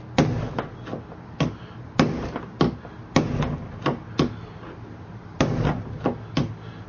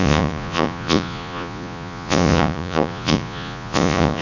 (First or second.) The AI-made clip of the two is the second